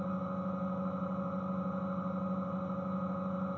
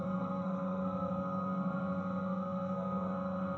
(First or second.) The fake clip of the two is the second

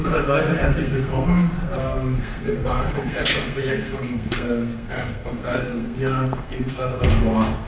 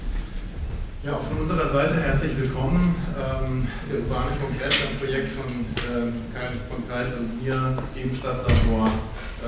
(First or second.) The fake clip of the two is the first